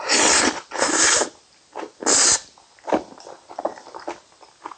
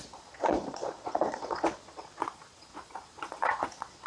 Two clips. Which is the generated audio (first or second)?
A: second